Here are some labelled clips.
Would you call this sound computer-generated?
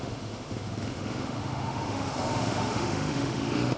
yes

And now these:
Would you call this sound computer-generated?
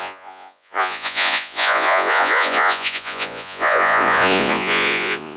yes